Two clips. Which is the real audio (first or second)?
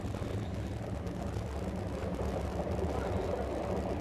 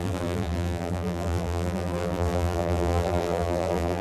first